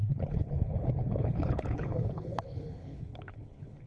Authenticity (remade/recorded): remade